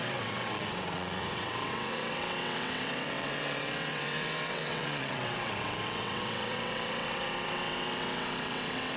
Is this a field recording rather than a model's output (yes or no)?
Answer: no